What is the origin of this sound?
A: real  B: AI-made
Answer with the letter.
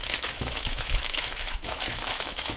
B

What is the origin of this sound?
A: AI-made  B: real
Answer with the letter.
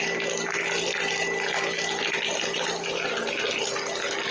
B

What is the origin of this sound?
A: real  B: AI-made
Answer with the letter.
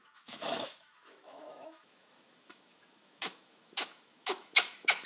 B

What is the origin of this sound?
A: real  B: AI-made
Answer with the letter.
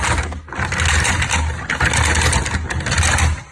A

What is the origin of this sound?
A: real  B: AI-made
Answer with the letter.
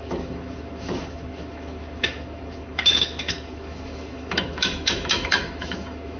B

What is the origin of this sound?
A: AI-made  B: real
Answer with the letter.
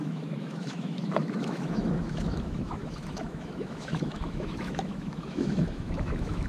A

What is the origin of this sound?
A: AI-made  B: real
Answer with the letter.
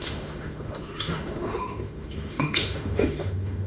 A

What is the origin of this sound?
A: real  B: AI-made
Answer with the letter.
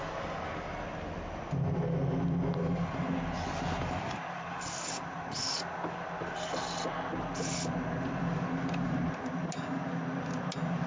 A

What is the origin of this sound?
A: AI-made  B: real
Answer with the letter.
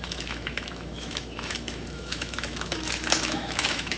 A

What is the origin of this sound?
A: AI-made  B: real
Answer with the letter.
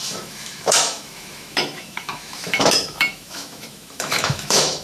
A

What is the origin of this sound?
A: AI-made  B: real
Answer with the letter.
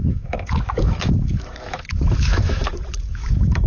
A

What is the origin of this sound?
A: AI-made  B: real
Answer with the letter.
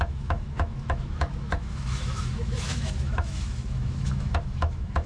A